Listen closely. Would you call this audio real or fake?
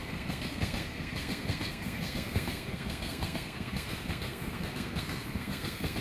fake